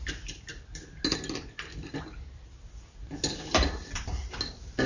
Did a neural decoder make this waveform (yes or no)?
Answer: no